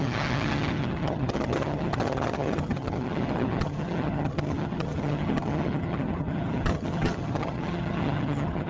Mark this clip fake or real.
fake